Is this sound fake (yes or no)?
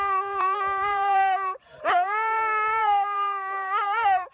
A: yes